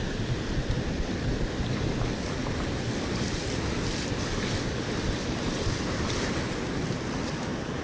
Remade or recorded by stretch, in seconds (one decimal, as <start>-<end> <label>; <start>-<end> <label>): 0.0-7.8 recorded